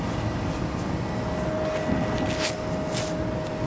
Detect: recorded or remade recorded